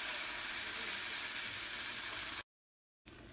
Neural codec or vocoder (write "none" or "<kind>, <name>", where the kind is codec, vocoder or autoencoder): none